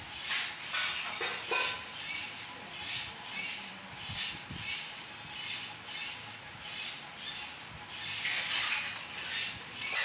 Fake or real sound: real